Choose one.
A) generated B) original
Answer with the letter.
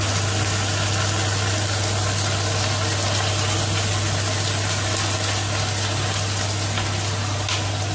B